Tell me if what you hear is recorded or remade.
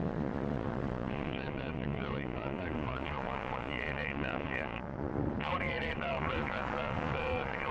remade